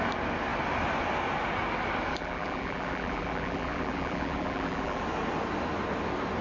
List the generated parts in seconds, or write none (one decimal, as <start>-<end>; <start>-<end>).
2.1-5.0